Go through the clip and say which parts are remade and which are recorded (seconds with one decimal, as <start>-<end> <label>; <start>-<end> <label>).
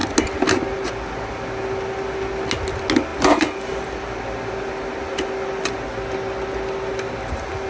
0.0-7.7 recorded